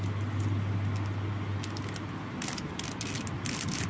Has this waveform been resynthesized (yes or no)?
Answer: no